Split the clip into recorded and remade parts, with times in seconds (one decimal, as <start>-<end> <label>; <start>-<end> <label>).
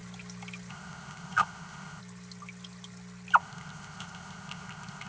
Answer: 0.0-0.7 recorded; 0.7-2.0 remade; 2.0-3.4 recorded; 3.4-5.1 remade